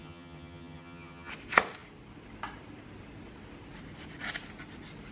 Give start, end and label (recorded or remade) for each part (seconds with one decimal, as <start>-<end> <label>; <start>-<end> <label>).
0.0-1.3 remade; 1.3-5.1 recorded